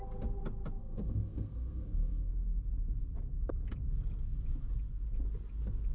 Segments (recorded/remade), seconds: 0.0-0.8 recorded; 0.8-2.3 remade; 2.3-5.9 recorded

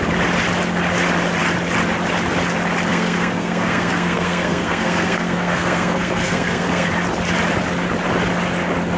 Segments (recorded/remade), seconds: 0.0-2.9 recorded; 2.9-6.9 remade; 6.9-9.0 recorded